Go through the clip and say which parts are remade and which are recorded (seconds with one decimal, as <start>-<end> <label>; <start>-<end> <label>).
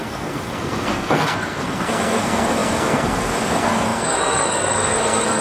0.0-5.4 remade